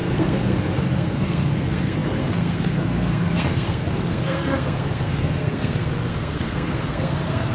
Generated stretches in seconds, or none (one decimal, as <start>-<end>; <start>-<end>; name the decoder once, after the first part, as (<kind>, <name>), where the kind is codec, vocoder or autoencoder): 0.0-7.5 (codec, SNAC)